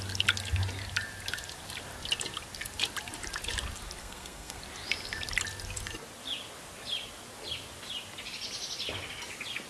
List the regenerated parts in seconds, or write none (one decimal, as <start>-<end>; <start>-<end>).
4.0-4.6